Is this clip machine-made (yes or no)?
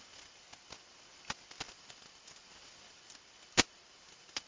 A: no